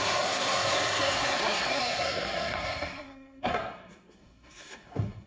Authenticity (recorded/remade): remade